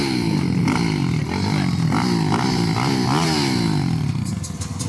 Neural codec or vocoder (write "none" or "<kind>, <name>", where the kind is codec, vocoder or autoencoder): none